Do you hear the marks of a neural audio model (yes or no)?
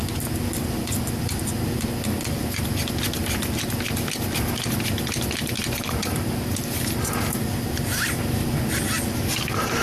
no